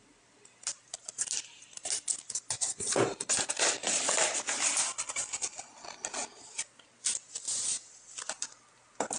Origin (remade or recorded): recorded